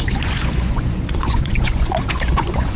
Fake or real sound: fake